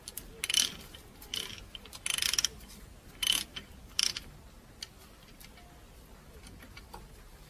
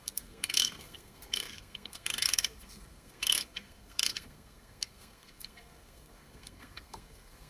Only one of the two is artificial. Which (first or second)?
second